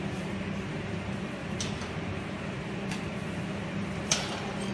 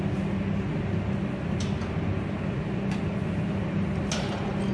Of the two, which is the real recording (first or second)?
second